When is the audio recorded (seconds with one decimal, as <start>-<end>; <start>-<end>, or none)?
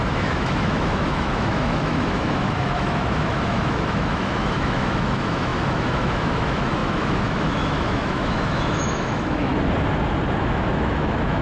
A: 9.5-10.4